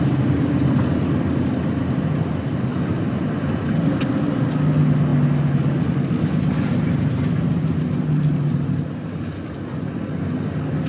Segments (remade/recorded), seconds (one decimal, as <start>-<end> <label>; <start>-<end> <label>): 0.0-1.8 recorded; 1.8-2.3 remade; 2.3-2.7 recorded; 2.7-3.9 remade; 3.9-10.9 recorded